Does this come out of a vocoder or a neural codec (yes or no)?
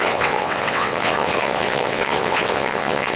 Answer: yes